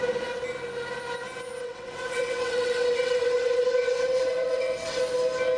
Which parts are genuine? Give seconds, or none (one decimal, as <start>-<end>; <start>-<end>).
0.0-1.6; 5.0-5.6